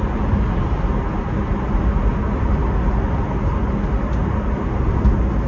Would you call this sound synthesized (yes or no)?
no